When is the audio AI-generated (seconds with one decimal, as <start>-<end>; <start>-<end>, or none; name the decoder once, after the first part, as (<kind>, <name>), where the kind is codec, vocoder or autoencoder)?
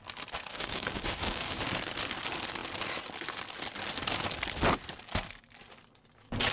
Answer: 0.5-1.6 (codec, DAC)